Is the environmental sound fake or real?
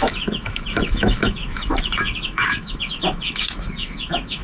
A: fake